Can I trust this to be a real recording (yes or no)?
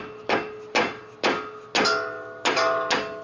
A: yes